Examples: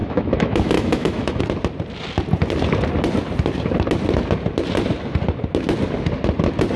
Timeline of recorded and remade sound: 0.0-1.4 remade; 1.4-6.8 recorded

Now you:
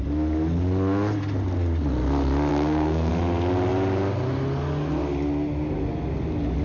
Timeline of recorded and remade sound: 0.0-2.5 recorded; 2.5-3.1 remade; 3.1-6.6 recorded